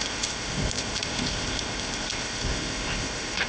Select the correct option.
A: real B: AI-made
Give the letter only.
B